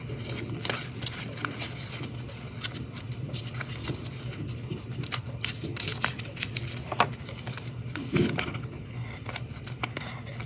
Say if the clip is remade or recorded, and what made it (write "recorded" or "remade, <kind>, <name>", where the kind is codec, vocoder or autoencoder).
recorded